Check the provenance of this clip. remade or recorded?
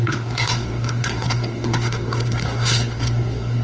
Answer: remade